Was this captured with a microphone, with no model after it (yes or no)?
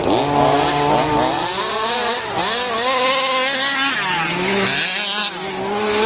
yes